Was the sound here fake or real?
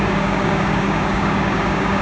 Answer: fake